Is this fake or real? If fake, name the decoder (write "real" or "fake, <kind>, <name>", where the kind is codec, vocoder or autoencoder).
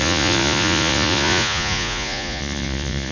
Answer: fake, vocoder, Vocos